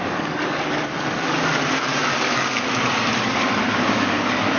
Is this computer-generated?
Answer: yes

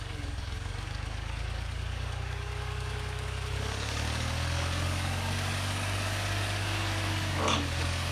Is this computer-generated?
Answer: yes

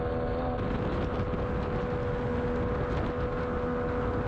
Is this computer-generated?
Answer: no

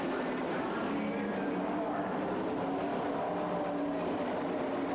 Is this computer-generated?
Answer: no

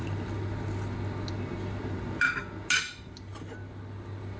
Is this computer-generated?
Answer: no